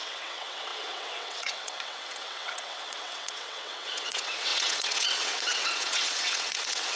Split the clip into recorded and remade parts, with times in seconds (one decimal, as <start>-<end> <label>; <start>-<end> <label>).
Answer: 0.0-7.0 remade